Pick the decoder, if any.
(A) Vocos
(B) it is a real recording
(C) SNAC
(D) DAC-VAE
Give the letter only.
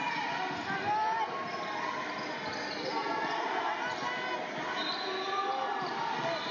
B